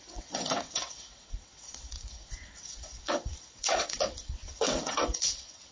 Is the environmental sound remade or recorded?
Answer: remade